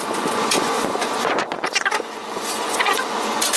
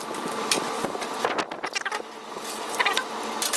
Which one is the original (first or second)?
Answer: second